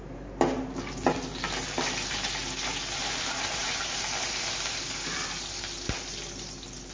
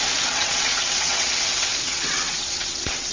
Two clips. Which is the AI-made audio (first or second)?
second